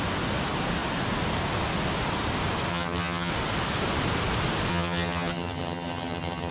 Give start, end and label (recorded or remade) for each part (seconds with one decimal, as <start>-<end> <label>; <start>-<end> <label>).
0.0-2.7 recorded; 2.7-3.3 remade; 3.3-4.7 recorded; 4.7-6.5 remade